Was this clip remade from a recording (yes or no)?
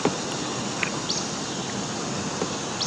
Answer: no